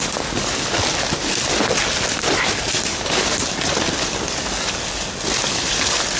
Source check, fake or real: real